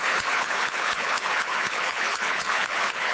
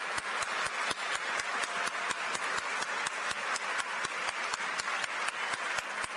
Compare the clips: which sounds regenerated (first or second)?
first